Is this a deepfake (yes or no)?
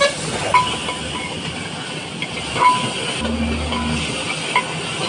no